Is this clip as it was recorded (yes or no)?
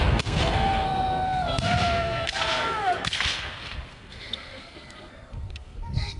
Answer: no